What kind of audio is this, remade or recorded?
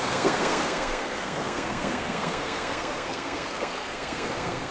remade